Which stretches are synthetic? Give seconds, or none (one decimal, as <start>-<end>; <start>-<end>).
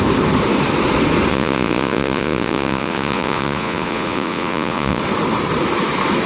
1.3-5.0